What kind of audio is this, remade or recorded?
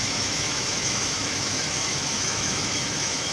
remade